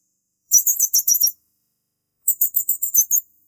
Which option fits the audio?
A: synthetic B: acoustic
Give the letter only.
A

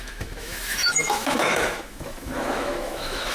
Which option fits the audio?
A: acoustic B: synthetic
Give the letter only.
B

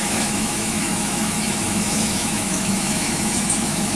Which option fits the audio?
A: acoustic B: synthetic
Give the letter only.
B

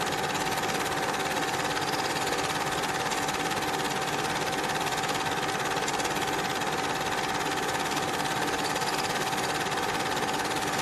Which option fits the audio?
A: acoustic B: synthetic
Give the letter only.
A